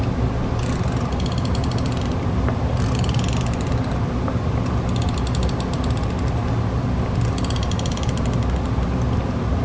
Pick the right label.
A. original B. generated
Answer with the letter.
A